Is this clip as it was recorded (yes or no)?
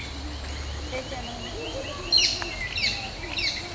yes